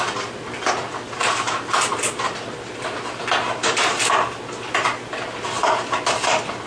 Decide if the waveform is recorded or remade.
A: recorded